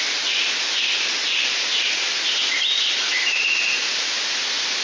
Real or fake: real